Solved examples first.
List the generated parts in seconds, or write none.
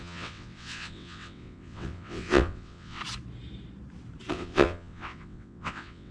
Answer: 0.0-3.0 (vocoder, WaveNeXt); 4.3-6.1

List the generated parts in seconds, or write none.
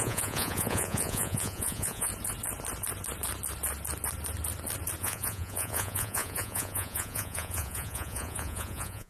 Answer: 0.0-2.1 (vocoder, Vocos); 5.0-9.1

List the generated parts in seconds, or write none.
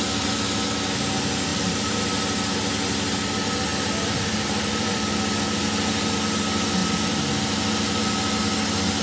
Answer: 1.5-2.0 (vocoder, BigVGAN v2); 3.7-5.6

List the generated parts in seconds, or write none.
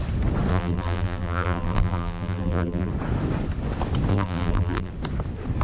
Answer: 0.5-2.9 (vocoder, BigVGAN v2); 4.1-4.9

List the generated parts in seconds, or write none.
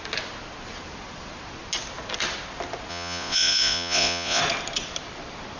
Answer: 2.9-4.4 (vocoder, Vocos)